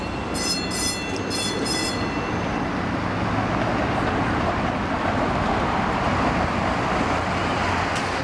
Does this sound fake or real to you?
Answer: real